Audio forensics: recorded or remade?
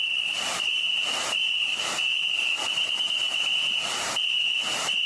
remade